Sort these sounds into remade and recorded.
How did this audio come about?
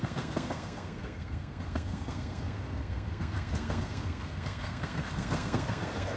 remade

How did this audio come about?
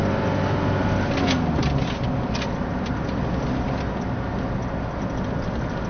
recorded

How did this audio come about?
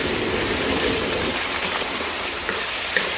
remade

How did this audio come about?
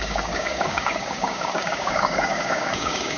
remade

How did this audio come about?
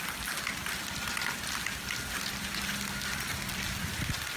recorded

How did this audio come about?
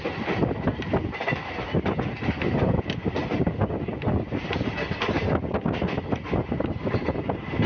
recorded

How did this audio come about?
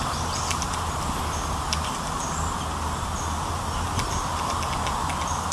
recorded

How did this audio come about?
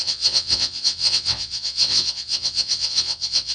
remade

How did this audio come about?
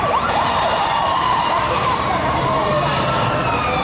remade